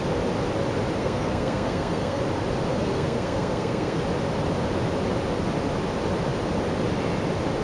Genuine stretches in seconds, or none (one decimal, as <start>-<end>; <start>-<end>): 0.0-1.0; 2.2-2.7; 4.0-7.6